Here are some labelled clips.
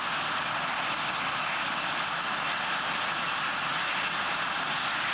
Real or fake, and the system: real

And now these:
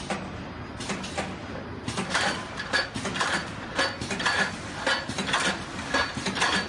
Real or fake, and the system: real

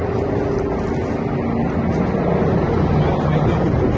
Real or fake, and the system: real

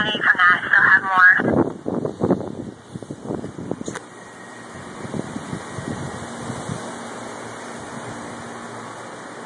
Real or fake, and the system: real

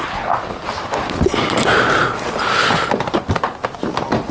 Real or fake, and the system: real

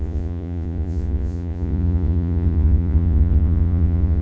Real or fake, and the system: fake, vocoder, Vocos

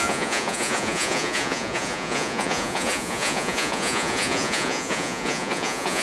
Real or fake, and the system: fake, vocoder, Vocos